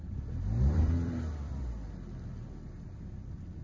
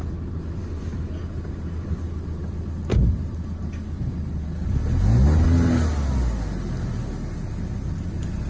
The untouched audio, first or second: second